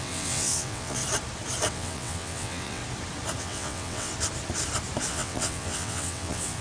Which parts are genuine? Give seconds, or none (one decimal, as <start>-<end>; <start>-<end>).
1.0-1.7; 2.8-3.4; 4.1-5.1